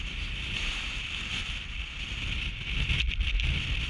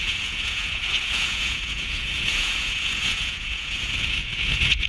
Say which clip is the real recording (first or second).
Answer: first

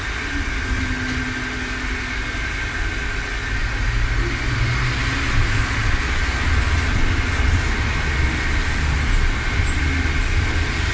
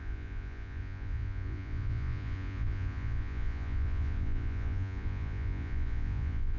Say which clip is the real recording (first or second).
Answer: first